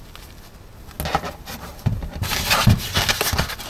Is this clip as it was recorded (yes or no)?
yes